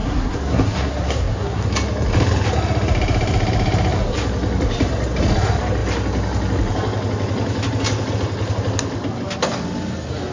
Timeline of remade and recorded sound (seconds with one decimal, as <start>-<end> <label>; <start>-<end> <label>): 0.0-1.7 remade; 1.7-10.3 recorded